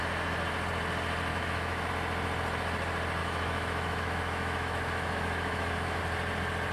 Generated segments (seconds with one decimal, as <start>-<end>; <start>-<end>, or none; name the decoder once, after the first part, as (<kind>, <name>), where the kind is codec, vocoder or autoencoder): 1.3-1.9 (autoencoder, DAC-VAE); 3.2-6.0